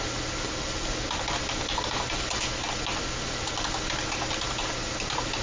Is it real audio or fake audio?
real